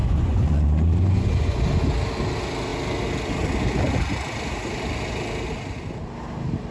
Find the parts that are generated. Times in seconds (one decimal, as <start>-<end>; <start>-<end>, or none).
0.0-1.6